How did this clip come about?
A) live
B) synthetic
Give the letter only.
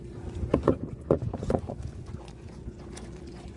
B